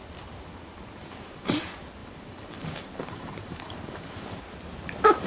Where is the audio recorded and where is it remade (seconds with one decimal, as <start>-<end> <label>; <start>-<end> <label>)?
0.0-1.0 recorded; 1.0-1.6 remade; 1.6-2.0 recorded; 2.0-4.4 remade; 4.4-5.3 recorded